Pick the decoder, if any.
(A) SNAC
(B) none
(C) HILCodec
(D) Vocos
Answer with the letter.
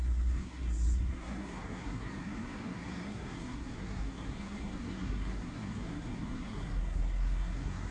A